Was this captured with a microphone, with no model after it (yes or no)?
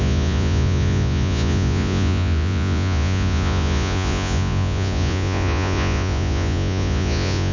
no